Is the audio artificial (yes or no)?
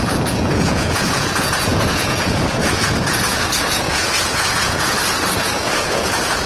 yes